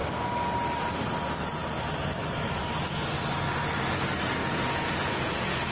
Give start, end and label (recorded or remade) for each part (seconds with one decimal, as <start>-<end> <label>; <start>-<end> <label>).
0.0-4.4 recorded; 4.4-5.7 remade